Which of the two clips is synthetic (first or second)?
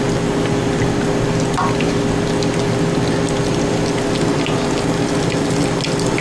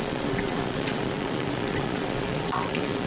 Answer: second